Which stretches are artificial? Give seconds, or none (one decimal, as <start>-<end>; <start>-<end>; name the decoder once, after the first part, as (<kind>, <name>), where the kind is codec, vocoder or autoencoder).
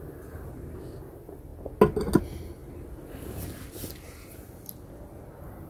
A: none